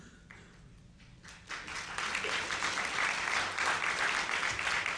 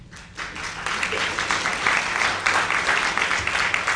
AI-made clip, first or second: first